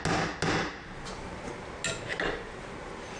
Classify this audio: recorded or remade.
recorded